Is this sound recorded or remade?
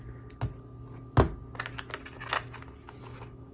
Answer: recorded